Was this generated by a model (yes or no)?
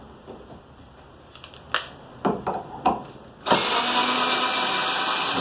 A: no